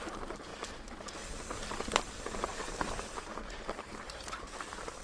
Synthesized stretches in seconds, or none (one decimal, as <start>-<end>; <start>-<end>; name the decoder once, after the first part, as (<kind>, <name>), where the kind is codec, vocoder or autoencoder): 0.0-0.5 (vocoder, BigVGAN v2); 2.2-5.0